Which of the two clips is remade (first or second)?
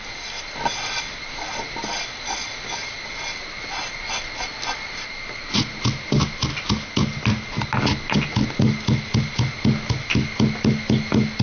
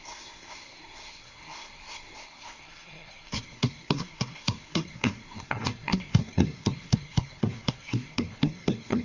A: second